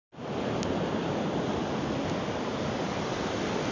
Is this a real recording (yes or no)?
yes